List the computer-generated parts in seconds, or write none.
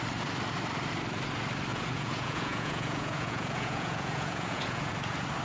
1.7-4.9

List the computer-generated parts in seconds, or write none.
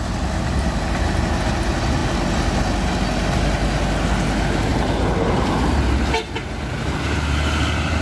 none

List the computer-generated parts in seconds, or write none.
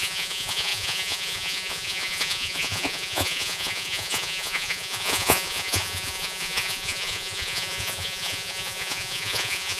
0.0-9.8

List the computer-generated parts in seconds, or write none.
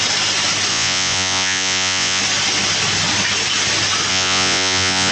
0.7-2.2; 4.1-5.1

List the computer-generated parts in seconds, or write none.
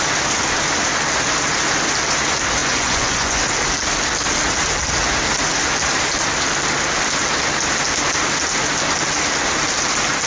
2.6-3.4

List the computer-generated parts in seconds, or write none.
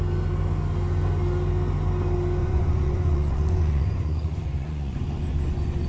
2.4-5.9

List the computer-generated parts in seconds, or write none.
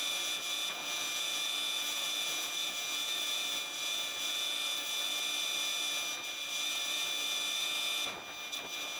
0.0-5.2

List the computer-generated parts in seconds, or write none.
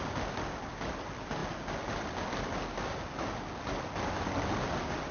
none